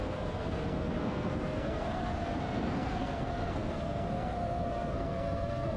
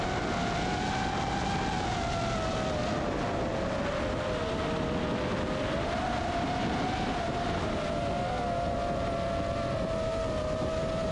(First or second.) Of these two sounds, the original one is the second